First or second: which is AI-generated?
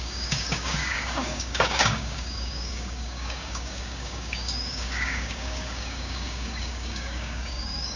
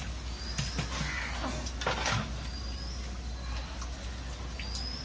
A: first